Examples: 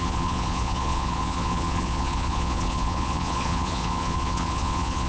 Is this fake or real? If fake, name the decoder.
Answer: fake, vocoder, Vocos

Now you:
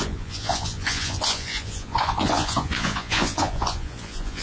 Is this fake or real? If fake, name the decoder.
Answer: fake, vocoder, Vocos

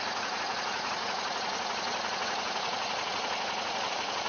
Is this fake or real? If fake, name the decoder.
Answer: fake, vocoder, Vocos